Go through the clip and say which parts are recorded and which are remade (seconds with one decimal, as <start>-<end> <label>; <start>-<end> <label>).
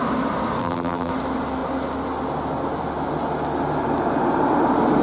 0.0-0.6 recorded; 0.6-1.1 remade; 1.1-5.0 recorded